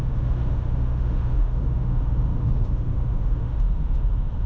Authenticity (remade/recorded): remade